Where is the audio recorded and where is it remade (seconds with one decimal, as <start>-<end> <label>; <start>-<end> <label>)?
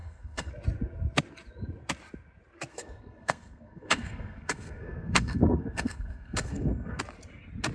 0.0-0.5 remade; 0.5-2.7 recorded; 2.7-7.0 remade; 7.0-7.7 recorded